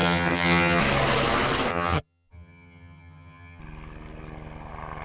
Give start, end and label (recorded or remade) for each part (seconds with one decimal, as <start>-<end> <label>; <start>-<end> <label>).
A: 0.0-0.8 remade; 0.8-1.7 recorded; 1.7-3.6 remade; 3.6-5.0 recorded